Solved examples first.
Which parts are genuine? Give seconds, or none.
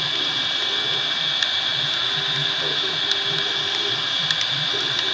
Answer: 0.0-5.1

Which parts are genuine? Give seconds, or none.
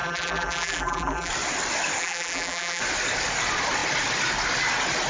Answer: 1.3-2.0; 2.8-5.1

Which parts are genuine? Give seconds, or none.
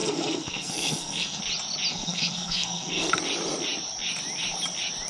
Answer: 1.4-1.9; 3.1-5.1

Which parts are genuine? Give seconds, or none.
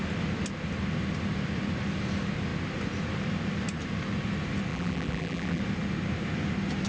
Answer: 0.0-4.7; 5.6-6.9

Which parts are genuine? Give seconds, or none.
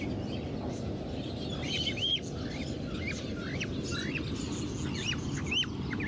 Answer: 0.0-6.1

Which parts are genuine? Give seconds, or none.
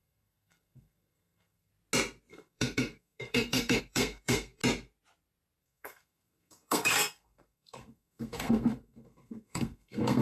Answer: 1.7-2.3; 4.6-5.6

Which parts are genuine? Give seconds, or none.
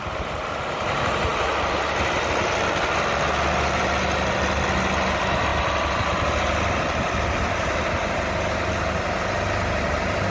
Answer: 0.0-10.3